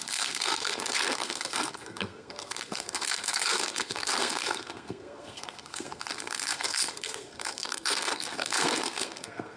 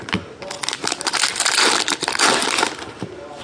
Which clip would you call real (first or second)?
second